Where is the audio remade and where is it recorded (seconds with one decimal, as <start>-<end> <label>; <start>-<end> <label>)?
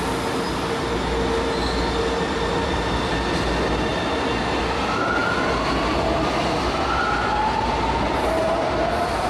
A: 0.0-3.9 recorded; 3.9-4.6 remade; 4.6-9.3 recorded